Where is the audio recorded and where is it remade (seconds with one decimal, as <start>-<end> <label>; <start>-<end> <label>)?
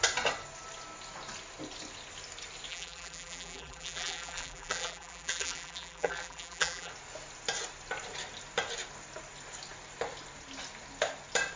0.0-2.7 recorded; 2.7-6.9 remade; 6.9-11.6 recorded